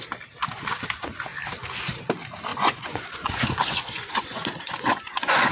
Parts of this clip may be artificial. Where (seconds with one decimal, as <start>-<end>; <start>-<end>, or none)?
2.5-5.5